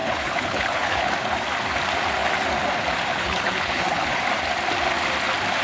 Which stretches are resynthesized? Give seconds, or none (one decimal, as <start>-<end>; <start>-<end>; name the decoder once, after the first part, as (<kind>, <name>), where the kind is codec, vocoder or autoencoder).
0.0-1.1 (codec, HILCodec); 3.1-4.1